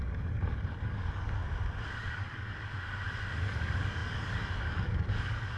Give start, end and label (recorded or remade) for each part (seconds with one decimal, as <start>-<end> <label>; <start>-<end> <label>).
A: 0.0-1.4 remade; 1.4-2.0 recorded; 2.0-2.7 remade; 2.7-3.4 recorded; 3.4-5.6 remade